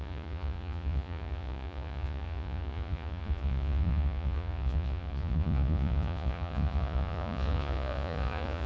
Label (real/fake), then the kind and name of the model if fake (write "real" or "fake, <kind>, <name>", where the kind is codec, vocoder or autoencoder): fake, vocoder, Vocos